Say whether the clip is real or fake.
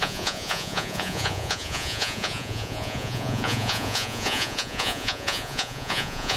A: fake